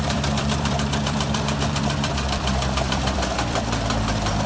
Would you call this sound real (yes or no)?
no